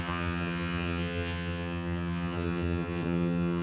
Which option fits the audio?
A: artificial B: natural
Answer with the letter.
A